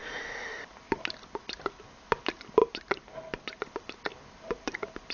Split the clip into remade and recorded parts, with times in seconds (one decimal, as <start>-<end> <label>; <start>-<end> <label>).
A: 0.0-5.1 recorded